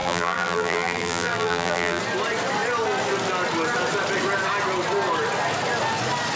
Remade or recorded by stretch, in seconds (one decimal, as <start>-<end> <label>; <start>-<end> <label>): 0.0-2.0 remade; 2.0-6.4 recorded